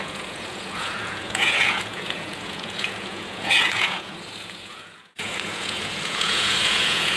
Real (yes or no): no